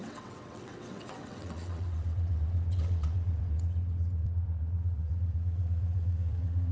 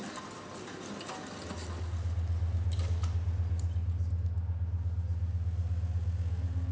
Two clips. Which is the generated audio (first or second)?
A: first